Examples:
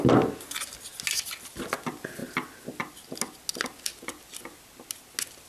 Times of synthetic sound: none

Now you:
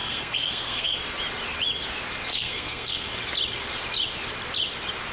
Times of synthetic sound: 0.0-1.0 (codec, SNAC); 2.3-3.1

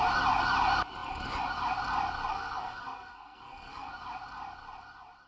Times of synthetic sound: 2.3-3.9 (codec, SNAC)

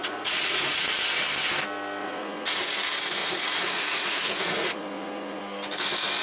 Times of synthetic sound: 0.0-0.9 (vocoder, Vocos); 2.0-2.6; 3.2-5.4